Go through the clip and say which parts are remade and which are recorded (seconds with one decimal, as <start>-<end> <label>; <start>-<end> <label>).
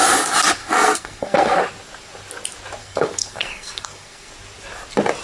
0.0-0.6 recorded; 0.6-1.6 remade; 1.6-2.8 recorded; 2.8-4.3 remade; 4.3-5.2 recorded